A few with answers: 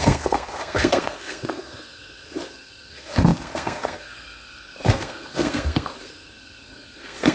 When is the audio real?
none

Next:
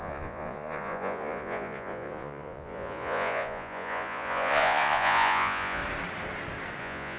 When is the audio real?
5.8-6.8